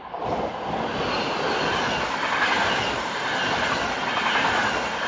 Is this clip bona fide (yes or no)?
yes